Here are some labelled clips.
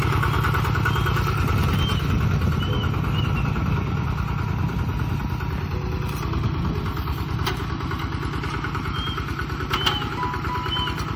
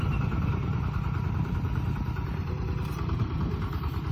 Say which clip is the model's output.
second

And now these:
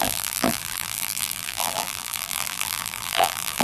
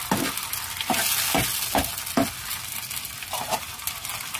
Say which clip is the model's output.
first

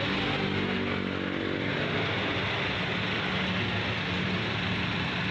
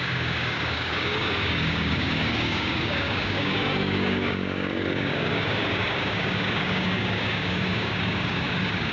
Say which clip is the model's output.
second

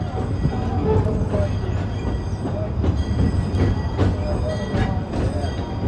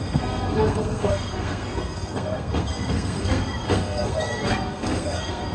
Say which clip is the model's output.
second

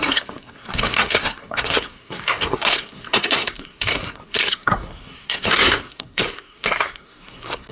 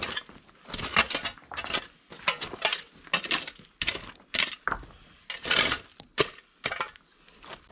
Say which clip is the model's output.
first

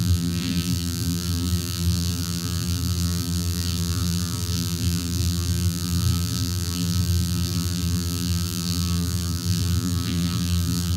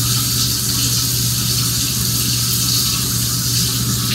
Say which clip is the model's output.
first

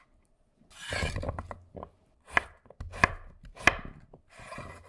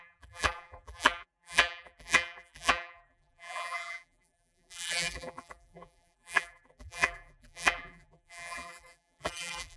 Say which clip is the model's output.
second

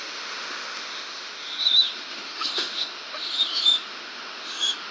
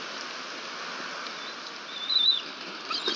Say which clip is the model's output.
first